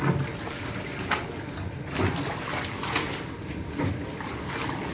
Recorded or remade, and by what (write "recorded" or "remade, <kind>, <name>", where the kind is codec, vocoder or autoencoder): recorded